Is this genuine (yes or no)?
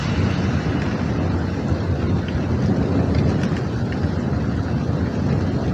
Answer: yes